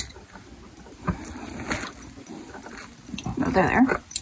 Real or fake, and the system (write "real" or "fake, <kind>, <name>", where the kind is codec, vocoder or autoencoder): real